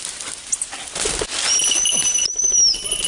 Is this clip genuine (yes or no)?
yes